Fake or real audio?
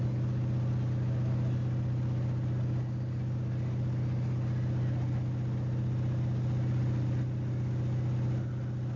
real